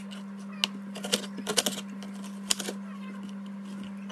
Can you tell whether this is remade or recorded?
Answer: recorded